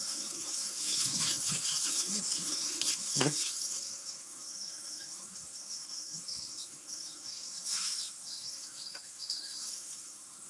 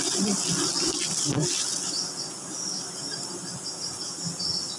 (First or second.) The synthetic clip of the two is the first